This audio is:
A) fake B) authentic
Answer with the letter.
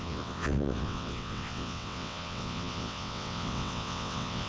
A